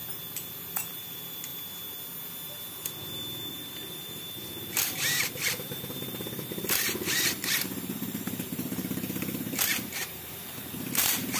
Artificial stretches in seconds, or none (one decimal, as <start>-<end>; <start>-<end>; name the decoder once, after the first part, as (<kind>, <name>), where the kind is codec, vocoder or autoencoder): 0.7-1.5 (vocoder, BigVGAN v2); 3.5-11.4